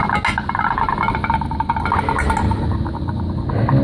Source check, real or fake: real